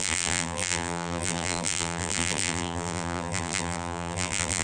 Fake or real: fake